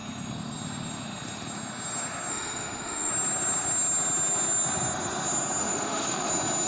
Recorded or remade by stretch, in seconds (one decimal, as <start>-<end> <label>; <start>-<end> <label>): 0.0-2.3 recorded; 2.3-3.1 remade; 3.1-5.6 recorded; 5.6-6.3 remade; 6.3-6.7 recorded